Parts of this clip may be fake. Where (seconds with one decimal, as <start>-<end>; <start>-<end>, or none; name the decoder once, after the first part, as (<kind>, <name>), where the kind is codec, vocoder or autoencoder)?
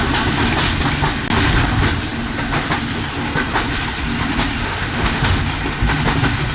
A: 4.6-5.4 (autoencoder, DAC-VAE)